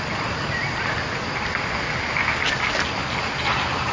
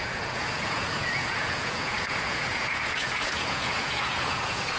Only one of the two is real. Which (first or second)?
first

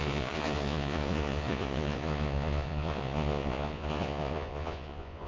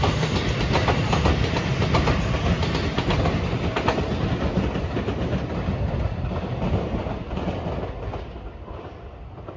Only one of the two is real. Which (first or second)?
second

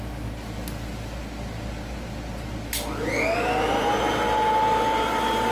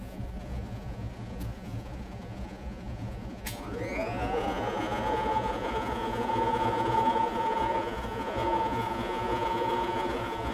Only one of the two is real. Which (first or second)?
first